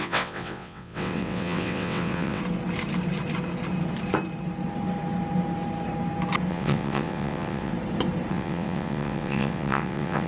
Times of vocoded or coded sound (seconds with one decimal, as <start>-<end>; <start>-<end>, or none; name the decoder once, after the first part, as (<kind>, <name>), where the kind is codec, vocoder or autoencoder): 0.0-2.4 (vocoder, WaveNeXt); 6.5-7.7; 8.3-10.3